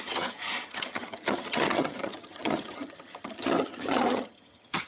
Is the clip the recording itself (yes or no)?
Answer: no